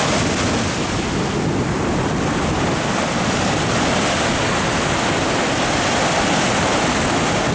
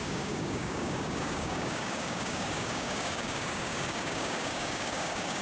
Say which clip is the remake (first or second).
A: second